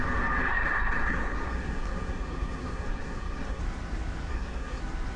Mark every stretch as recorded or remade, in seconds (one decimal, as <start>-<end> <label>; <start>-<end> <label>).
0.0-0.5 recorded; 0.5-3.6 remade; 3.6-4.3 recorded; 4.3-4.8 remade; 4.8-5.2 recorded